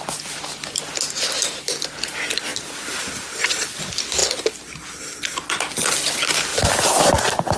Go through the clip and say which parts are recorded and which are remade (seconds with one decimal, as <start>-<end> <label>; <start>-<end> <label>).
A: 0.0-2.5 recorded; 2.5-3.8 remade; 3.8-6.5 recorded; 6.5-7.1 remade; 7.1-7.6 recorded